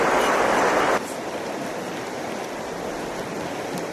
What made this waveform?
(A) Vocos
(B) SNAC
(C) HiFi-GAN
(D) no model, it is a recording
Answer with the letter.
D